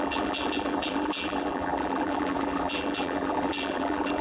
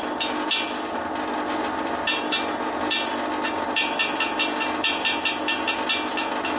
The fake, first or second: first